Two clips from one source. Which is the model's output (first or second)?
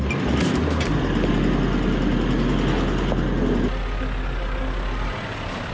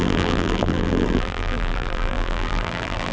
second